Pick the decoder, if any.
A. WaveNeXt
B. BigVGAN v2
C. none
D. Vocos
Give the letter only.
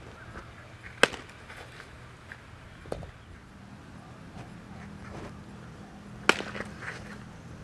C